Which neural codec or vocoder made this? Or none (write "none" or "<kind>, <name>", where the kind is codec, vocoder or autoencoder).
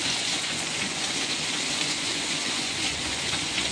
vocoder, Vocos